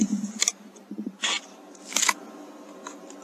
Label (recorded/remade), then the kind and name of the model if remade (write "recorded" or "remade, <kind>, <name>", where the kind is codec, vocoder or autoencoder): remade, vocoder, BigVGAN v2